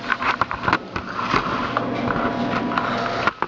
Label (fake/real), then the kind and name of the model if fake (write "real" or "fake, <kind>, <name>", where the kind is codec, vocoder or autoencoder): real